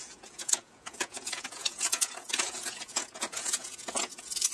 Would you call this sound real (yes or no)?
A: no